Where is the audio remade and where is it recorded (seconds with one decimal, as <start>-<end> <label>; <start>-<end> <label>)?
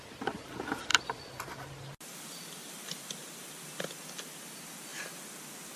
0.0-5.8 recorded